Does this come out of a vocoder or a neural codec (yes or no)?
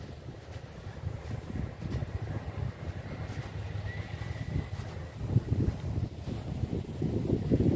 no